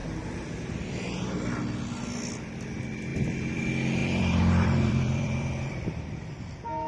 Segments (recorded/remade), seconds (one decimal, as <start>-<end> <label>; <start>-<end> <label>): 0.0-3.1 recorded; 3.1-3.6 remade; 3.6-4.0 recorded; 4.0-6.4 remade; 6.4-6.9 recorded